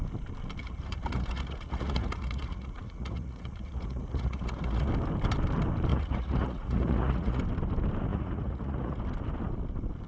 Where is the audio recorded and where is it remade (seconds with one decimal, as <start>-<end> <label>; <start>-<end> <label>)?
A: 0.0-0.6 recorded; 0.6-4.9 remade; 4.9-5.9 recorded; 5.9-7.4 remade; 7.4-8.1 recorded; 8.1-9.0 remade; 9.0-10.1 recorded